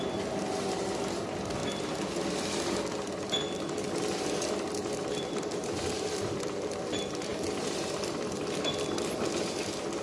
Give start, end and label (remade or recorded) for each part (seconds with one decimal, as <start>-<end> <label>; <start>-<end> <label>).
0.0-10.0 recorded